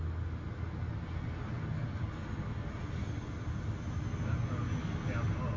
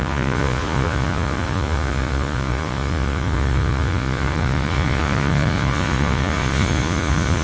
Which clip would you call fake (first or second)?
second